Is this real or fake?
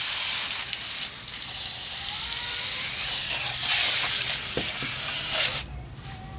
real